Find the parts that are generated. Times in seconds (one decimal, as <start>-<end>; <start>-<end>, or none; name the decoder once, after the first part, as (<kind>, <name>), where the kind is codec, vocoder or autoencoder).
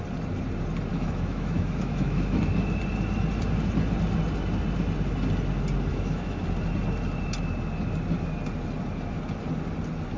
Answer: 0.9-2.4 (autoencoder, DAC-VAE); 5.9-6.4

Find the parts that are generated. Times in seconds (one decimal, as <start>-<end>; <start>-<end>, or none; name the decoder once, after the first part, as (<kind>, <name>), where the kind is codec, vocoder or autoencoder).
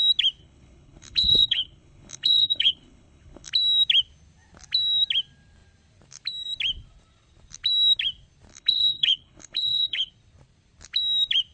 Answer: 0.4-3.5 (codec, HILCodec); 8.5-10.1